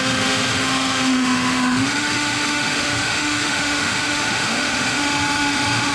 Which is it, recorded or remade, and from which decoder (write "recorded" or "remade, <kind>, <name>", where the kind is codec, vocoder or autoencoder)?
remade, autoencoder, DAC-VAE